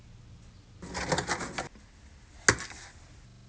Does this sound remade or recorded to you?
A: recorded